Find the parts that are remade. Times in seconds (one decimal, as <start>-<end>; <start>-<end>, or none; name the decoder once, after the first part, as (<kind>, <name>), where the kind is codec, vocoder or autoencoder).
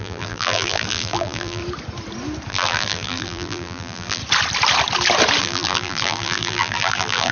0.0-1.6 (vocoder, BigVGAN v2); 2.5-4.2; 5.4-7.3